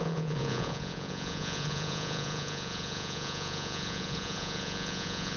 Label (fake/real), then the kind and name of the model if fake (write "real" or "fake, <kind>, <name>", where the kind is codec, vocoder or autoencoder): fake, vocoder, Vocos